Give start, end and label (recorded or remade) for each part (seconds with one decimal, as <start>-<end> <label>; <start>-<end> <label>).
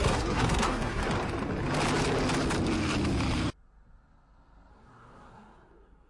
0.0-1.0 remade; 1.0-4.7 recorded; 4.7-6.1 remade